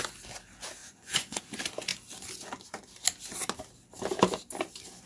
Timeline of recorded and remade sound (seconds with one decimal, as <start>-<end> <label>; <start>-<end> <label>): 0.0-0.8 recorded; 0.8-1.4 remade; 1.4-5.1 recorded